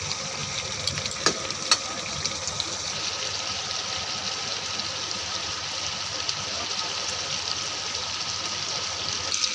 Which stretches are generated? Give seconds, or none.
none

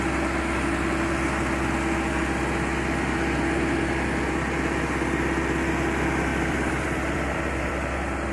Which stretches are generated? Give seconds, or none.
6.3-7.7 (vocoder, BigVGAN v2)

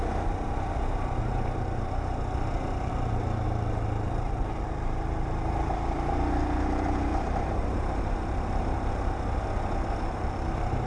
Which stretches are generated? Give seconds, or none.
7.1-8.0 (vocoder, BigVGAN v2)

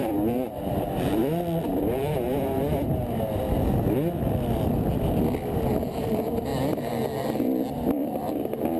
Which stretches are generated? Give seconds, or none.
0.0-1.2 (vocoder, BigVGAN v2); 1.7-3.0; 5.7-6.5; 8.3-8.8

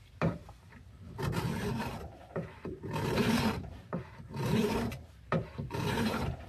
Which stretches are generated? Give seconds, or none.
0.0-0.4 (vocoder, BigVGAN v2); 2.0-6.5

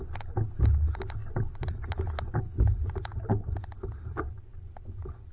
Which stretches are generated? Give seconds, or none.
none

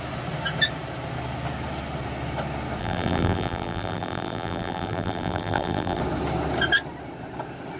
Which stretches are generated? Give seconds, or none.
2.8-6.0 (vocoder, BigVGAN v2)